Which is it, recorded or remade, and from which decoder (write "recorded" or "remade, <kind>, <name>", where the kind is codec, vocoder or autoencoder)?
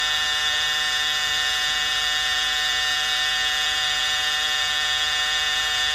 remade, vocoder, BigVGAN v2